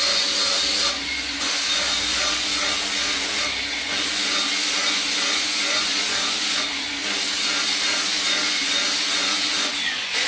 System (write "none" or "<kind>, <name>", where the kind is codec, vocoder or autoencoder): vocoder, Vocos